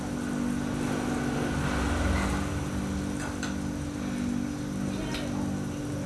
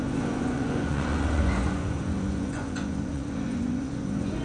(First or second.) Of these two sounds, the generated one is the second